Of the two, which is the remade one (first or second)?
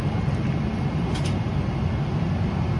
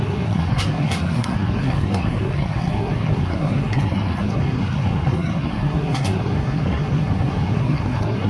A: second